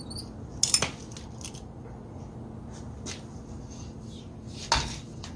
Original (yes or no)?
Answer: yes